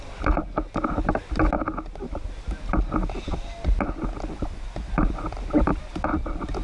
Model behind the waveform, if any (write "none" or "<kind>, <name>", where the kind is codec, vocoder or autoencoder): none